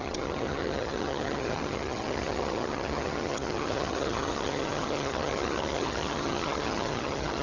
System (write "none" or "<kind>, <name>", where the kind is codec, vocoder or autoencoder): vocoder, HiFi-GAN